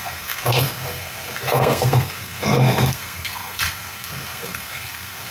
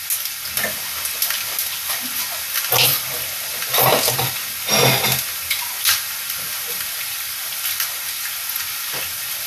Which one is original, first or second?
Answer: second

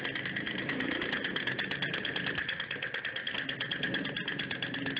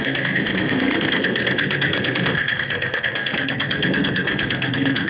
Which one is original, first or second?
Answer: first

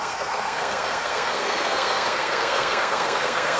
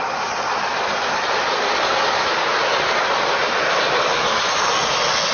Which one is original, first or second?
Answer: second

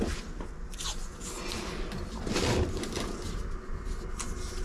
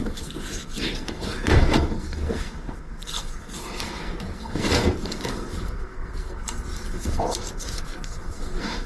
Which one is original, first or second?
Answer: first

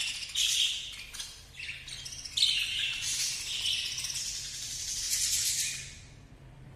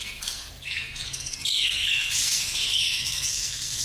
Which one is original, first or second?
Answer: first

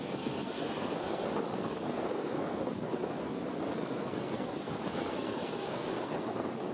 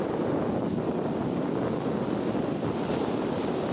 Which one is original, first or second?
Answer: second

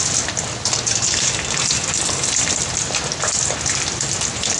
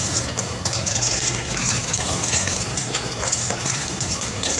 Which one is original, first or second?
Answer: first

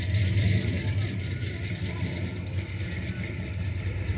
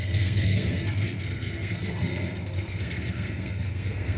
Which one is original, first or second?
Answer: first